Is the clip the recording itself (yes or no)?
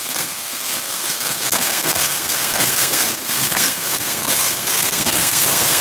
no